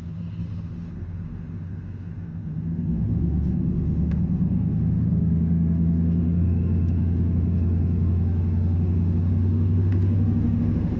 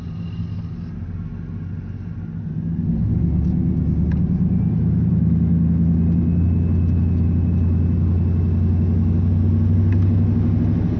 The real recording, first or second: second